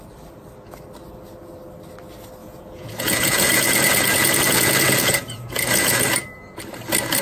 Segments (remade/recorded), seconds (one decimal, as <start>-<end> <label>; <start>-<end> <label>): 0.0-2.4 recorded; 2.4-6.6 remade; 6.6-7.2 recorded